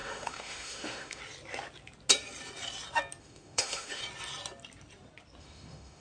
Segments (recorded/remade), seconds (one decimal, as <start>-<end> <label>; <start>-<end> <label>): 0.0-1.2 remade; 1.2-3.2 recorded; 3.2-4.0 remade; 4.0-5.4 recorded; 5.4-6.0 remade